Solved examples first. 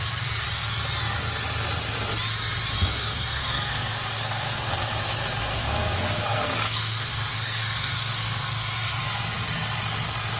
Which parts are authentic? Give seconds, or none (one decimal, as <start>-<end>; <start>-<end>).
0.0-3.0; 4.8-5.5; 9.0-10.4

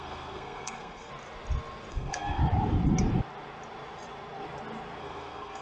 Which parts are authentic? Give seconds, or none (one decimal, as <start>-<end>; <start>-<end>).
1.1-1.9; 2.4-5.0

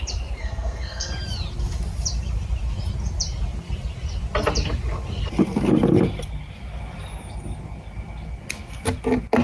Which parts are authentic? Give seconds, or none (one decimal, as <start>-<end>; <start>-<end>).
0.0-0.4; 1.1-9.4

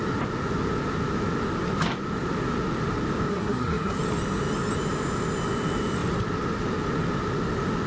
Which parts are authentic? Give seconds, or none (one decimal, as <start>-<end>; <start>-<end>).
0.0-3.3; 4.0-7.9

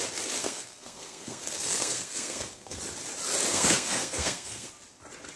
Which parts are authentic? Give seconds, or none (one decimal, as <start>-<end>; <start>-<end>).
0.0-0.4; 2.8-3.5; 4.7-5.4

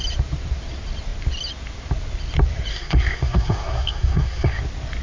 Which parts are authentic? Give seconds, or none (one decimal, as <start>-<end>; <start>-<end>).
0.0-2.7; 4.6-5.0

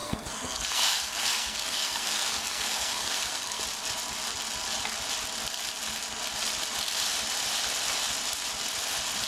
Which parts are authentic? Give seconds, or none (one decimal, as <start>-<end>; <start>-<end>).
3.6-9.3

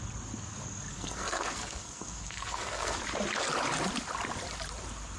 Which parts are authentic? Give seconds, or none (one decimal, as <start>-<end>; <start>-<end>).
0.0-0.9; 3.0-5.2